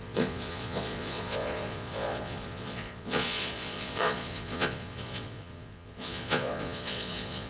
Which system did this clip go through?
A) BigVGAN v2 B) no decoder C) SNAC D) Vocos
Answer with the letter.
D